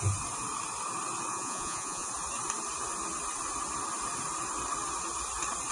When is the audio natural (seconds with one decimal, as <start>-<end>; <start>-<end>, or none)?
0.0-1.3; 2.1-5.7